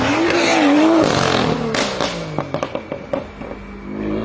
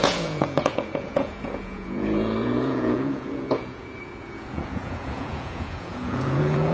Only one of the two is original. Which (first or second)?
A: first